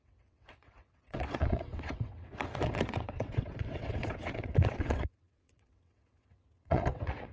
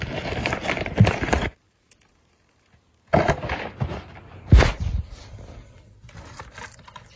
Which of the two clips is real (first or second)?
second